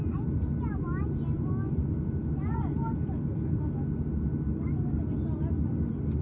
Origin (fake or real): real